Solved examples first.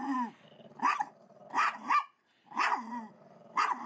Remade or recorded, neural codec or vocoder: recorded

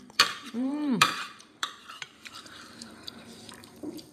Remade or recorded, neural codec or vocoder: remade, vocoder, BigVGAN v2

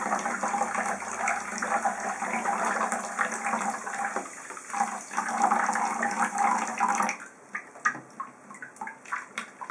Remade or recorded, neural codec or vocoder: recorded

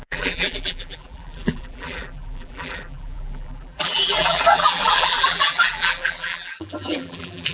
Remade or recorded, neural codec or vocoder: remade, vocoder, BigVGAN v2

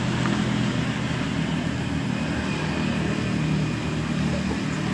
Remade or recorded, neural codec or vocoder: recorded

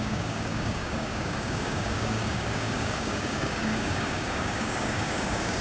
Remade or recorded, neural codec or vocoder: remade, codec, DAC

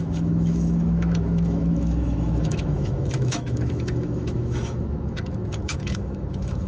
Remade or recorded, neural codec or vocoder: remade, autoencoder, DAC-VAE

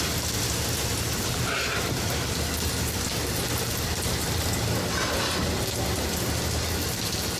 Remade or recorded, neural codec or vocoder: recorded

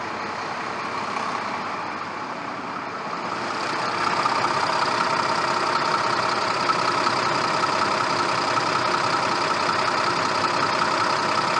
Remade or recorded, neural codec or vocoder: recorded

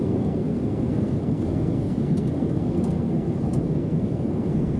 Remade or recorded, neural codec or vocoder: remade, codec, SNAC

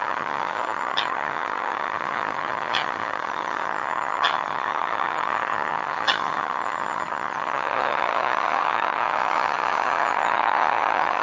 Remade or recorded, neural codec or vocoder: remade, vocoder, HiFi-GAN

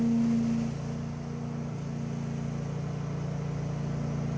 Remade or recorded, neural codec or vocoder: recorded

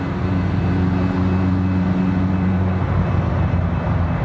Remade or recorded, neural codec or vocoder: recorded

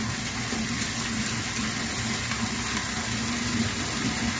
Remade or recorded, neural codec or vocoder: recorded